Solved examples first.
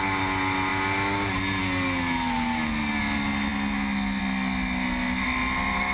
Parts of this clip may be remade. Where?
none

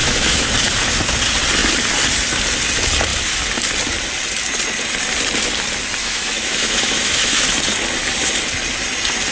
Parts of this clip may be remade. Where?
0.0-0.5 (autoencoder, DAC-VAE); 6.0-7.5

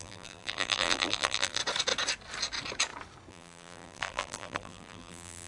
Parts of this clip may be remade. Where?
0.0-1.6 (vocoder, BigVGAN v2); 3.3-5.5

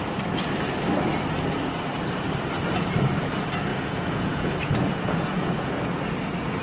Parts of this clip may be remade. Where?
3.7-5.7 (vocoder, Vocos)

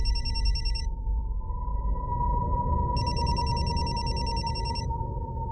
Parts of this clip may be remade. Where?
0.0-1.2 (autoencoder, DAC-VAE); 4.5-5.5